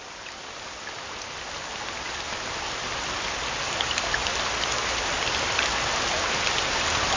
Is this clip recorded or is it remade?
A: recorded